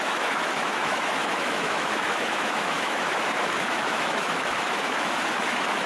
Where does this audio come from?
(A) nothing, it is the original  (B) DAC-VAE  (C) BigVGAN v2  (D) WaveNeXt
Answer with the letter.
B